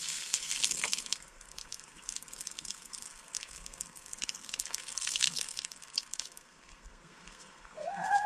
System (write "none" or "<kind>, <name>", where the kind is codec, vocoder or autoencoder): codec, SNAC